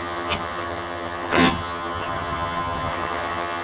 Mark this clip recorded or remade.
remade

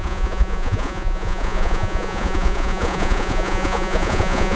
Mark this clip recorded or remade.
remade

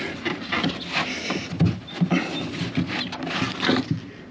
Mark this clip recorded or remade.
recorded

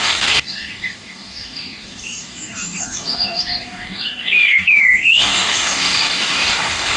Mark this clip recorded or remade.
remade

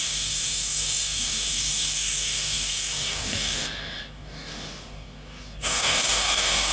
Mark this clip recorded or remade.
remade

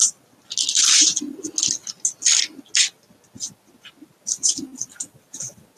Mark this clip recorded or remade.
recorded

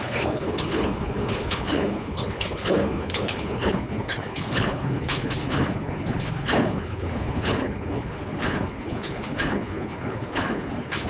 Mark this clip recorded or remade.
remade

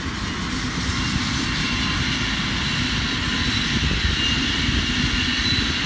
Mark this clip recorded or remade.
recorded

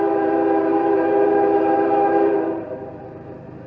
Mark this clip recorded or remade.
remade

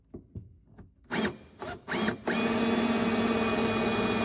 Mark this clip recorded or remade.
recorded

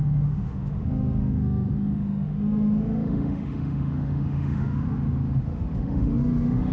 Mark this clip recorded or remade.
remade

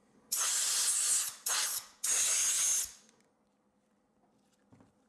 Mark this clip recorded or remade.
recorded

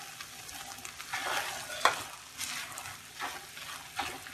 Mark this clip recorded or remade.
recorded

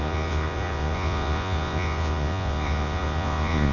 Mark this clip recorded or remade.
remade